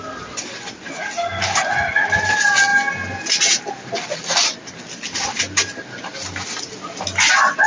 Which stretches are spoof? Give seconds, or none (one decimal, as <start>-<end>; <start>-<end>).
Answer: none